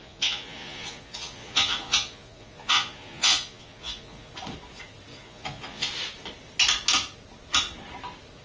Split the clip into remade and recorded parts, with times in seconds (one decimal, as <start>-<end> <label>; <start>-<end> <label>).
0.0-4.3 remade; 4.3-5.1 recorded; 5.1-5.9 remade; 5.9-8.4 recorded